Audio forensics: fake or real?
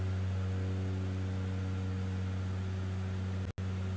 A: real